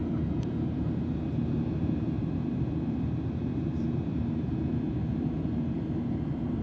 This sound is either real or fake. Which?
fake